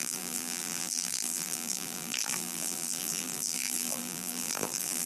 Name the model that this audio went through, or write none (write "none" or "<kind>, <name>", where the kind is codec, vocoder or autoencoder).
vocoder, BigVGAN v2